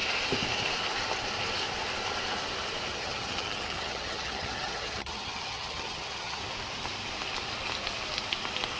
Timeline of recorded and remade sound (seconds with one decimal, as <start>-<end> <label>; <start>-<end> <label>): 0.0-2.9 recorded; 2.9-6.4 remade; 6.4-8.8 recorded